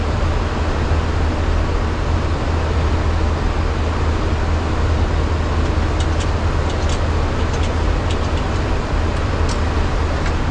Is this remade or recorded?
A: recorded